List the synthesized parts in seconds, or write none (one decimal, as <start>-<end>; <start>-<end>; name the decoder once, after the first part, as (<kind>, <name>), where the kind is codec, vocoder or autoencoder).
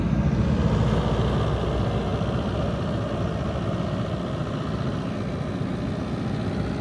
none